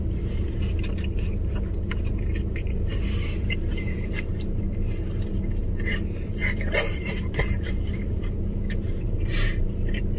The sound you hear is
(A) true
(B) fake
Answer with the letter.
B